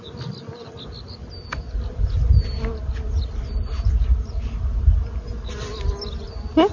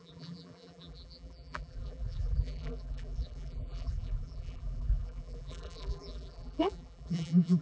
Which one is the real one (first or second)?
first